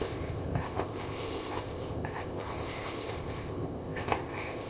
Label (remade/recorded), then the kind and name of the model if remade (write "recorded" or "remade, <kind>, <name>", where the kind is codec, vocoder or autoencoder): remade, codec, ZipCodec